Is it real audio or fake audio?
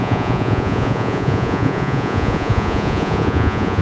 fake